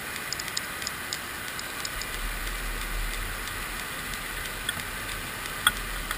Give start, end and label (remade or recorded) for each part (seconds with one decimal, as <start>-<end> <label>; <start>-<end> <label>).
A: 0.0-6.2 recorded